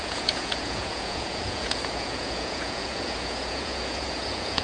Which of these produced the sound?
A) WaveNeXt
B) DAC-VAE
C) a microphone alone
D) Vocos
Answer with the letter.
D